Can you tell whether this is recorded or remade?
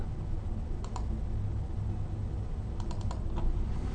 recorded